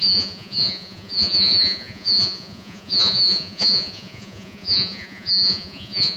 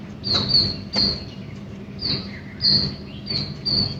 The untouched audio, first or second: second